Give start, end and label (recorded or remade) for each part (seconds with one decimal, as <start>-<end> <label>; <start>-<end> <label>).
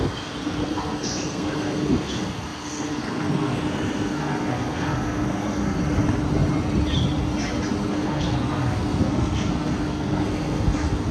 0.0-5.8 remade; 5.8-7.9 recorded; 7.9-11.1 remade